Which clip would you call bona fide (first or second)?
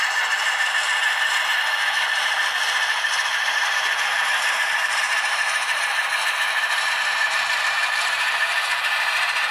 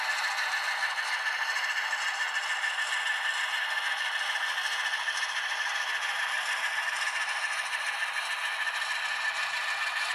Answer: second